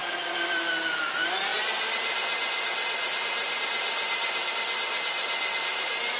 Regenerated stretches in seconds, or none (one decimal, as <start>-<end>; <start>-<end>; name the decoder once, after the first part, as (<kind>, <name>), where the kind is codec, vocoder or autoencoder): 0.0-1.1 (vocoder, BigVGAN v2)